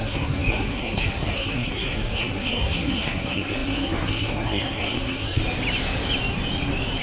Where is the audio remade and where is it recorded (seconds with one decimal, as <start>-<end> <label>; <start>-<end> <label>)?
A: 0.0-5.4 remade; 5.4-7.0 recorded